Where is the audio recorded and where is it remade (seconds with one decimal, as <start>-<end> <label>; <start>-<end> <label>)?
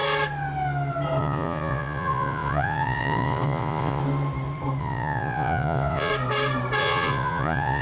0.0-1.2 recorded; 1.2-4.0 remade; 4.0-4.8 recorded; 4.8-6.1 remade; 6.1-6.8 recorded; 6.8-7.8 remade